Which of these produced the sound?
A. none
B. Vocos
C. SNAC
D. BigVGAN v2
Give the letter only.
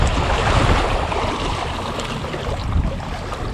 D